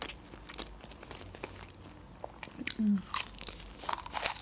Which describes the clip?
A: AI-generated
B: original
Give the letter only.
B